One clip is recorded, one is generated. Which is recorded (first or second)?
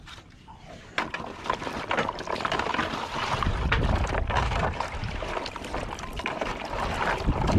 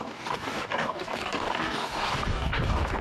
first